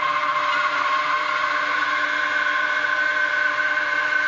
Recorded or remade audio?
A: remade